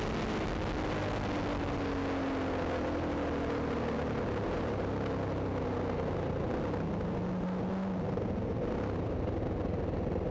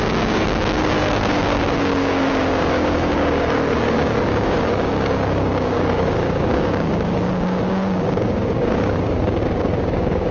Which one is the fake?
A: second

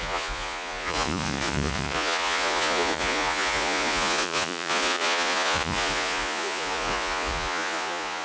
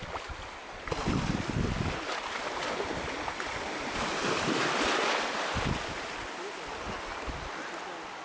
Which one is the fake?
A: first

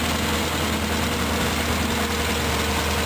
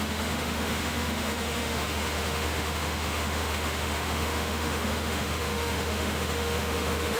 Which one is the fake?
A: second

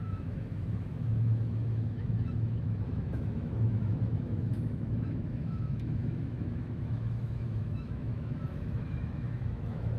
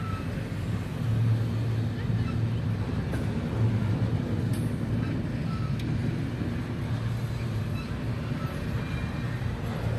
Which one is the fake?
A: first